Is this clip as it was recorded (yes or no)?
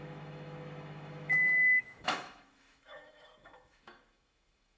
no